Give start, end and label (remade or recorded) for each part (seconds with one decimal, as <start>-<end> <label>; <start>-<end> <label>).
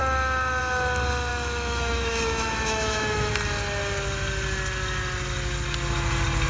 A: 0.0-1.3 recorded; 1.3-3.3 remade; 3.3-6.5 recorded